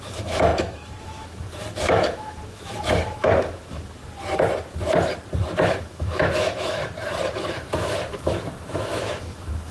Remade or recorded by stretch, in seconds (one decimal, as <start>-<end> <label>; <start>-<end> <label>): 0.0-4.0 remade; 4.0-5.5 recorded; 5.5-6.8 remade; 6.8-7.4 recorded; 7.4-9.7 remade